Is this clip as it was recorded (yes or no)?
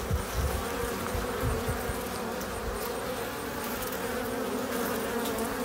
yes